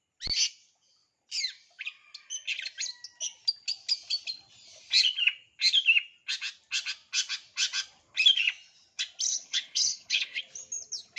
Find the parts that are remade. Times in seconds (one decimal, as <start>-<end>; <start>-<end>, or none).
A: 9.3-10.4